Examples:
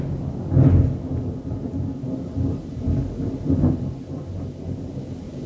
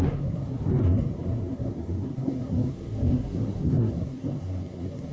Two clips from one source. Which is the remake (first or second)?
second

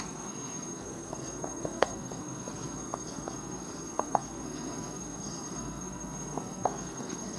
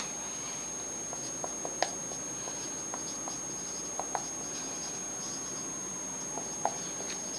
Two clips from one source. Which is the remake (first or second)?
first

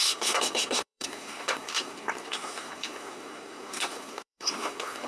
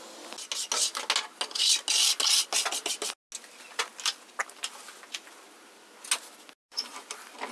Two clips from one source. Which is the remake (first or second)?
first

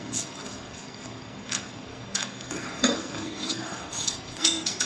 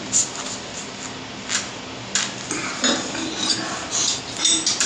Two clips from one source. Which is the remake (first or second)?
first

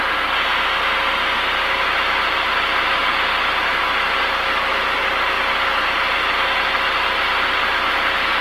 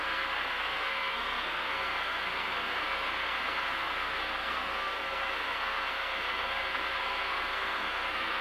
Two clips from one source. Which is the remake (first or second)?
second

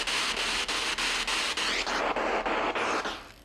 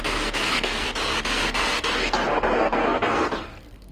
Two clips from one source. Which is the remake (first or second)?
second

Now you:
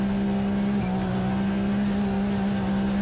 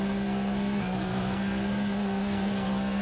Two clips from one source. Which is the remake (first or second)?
second